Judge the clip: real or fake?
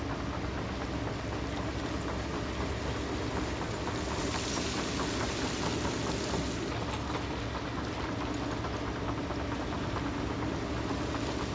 real